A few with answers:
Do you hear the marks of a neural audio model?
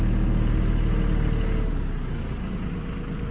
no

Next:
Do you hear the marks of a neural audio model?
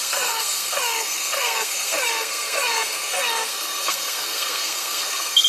yes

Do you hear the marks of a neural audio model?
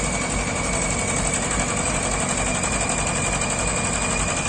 no